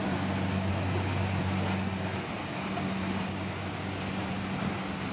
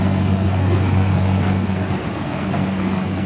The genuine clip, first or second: first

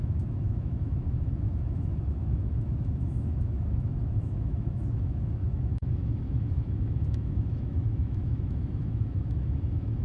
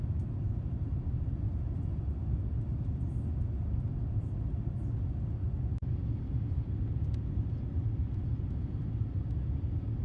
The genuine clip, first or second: second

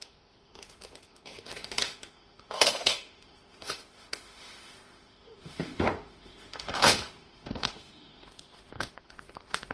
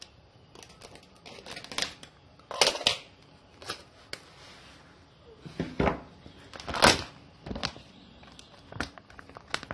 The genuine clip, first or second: second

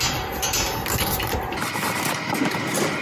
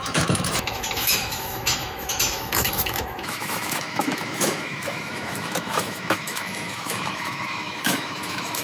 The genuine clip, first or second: first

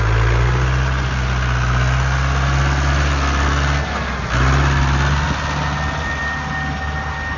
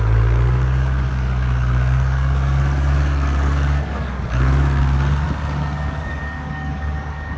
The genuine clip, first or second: first